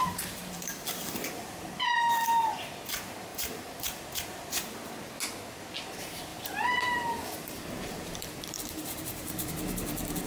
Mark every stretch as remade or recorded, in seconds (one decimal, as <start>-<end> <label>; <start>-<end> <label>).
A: 0.0-1.4 remade; 1.4-3.3 recorded; 3.3-4.0 remade; 4.0-6.3 recorded; 6.3-9.5 remade; 9.5-10.3 recorded